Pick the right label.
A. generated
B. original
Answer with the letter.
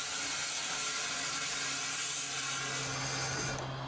B